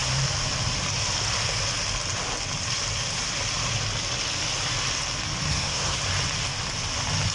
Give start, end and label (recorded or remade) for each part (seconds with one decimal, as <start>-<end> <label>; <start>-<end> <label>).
0.0-5.5 recorded; 5.5-6.0 remade; 6.0-7.3 recorded